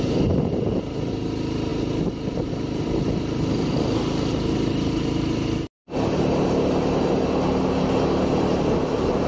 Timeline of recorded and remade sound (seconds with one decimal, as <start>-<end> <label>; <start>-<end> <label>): 0.0-9.3 recorded